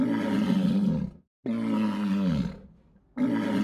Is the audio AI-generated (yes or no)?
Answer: no